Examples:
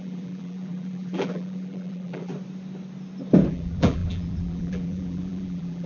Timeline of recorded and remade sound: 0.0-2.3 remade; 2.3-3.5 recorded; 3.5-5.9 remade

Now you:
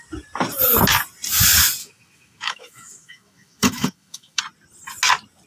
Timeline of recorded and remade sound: 0.0-1.8 recorded; 1.8-4.4 remade; 4.4-5.5 recorded

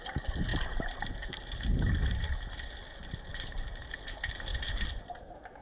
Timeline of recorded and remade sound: 0.0-3.0 recorded; 3.0-4.0 remade; 4.0-4.5 recorded; 4.5-5.6 remade

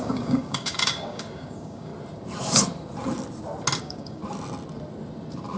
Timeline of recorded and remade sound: 0.0-1.9 remade; 1.9-3.8 recorded; 3.8-4.2 remade; 4.2-5.6 recorded

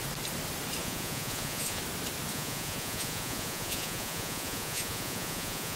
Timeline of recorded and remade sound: 0.0-0.8 recorded; 0.8-1.8 remade; 1.8-2.3 recorded; 2.3-5.8 remade